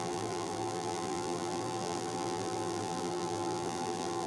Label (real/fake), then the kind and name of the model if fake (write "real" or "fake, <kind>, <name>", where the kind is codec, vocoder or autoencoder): fake, vocoder, BigVGAN v2